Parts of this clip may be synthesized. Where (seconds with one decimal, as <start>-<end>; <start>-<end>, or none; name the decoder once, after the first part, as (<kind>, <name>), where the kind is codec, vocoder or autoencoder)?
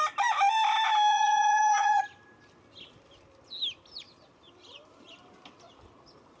1.1-2.0 (vocoder, Vocos)